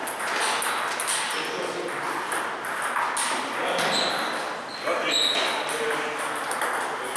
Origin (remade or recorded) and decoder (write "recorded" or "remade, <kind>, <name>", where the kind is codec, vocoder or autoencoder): recorded